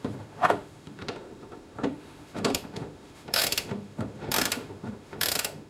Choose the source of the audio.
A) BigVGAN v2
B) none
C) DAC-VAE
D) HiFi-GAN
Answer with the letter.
C